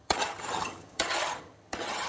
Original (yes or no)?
no